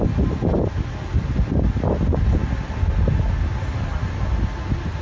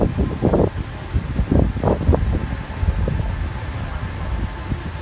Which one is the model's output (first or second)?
second